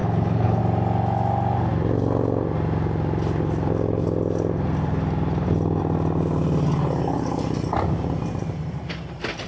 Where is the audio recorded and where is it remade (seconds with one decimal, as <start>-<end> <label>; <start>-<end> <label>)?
0.0-0.6 remade; 0.6-9.5 recorded